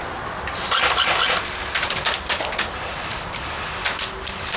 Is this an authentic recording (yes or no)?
yes